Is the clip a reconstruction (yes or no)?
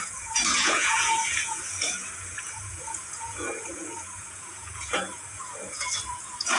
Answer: yes